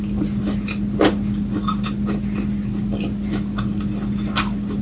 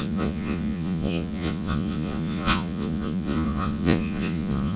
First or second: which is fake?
second